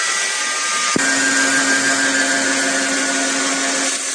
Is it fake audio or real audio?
real